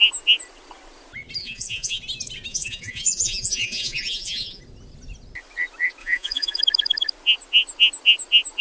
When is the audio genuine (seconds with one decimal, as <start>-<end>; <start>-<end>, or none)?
0.0-1.4; 2.0-2.5; 4.6-6.0; 6.6-8.6